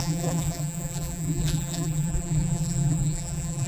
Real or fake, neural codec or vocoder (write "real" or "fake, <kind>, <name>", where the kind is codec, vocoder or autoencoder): fake, vocoder, BigVGAN v2